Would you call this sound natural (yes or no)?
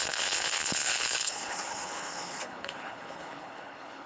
no